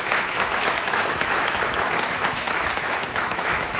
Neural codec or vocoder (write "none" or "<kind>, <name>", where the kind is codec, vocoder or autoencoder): autoencoder, DAC-VAE